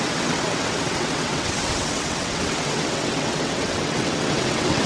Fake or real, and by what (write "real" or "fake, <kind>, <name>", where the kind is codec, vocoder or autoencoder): fake, vocoder, WaveNeXt